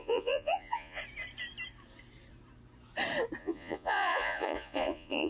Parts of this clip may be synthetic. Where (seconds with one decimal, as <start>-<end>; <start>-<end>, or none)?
0.0-1.0; 3.4-5.3